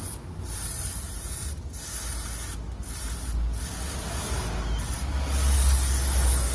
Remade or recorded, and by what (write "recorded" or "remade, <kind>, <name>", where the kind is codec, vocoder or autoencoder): recorded